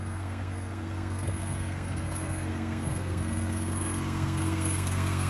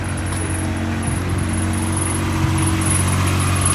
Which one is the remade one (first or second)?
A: first